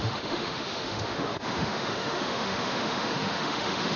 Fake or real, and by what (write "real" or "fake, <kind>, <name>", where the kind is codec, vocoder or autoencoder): fake, autoencoder, DAC-VAE